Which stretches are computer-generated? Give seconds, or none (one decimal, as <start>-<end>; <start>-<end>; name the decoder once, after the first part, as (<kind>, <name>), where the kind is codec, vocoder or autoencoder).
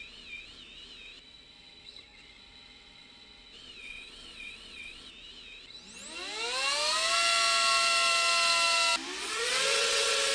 3.8-5.1 (vocoder, WaveNeXt); 9.2-10.3